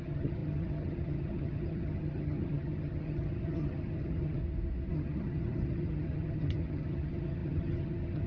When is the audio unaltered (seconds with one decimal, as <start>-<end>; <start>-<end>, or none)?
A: 4.4-4.9